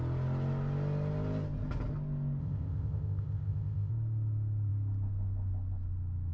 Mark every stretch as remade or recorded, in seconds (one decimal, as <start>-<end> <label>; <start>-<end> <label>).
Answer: 0.0-2.4 recorded; 2.4-3.9 remade; 3.9-6.3 recorded